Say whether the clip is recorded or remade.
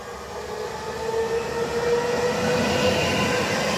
recorded